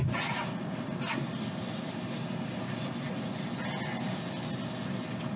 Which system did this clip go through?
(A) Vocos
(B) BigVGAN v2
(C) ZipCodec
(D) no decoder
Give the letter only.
D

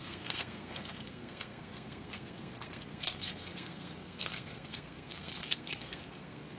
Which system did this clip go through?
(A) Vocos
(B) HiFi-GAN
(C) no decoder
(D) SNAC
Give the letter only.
D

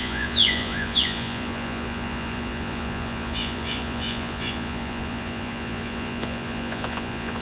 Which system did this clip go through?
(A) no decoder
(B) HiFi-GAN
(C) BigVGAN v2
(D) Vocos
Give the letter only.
D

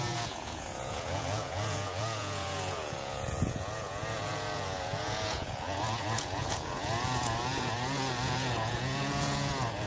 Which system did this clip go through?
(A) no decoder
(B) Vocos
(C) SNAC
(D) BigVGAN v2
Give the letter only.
B